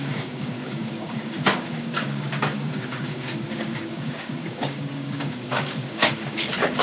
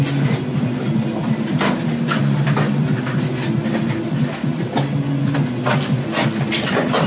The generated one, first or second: first